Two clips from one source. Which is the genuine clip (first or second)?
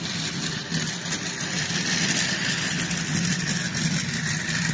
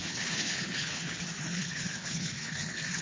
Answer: first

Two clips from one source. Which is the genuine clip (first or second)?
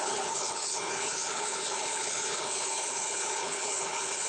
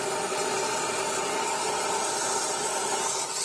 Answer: second